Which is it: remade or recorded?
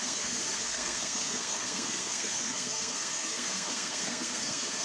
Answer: remade